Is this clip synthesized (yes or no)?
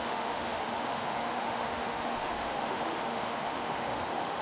yes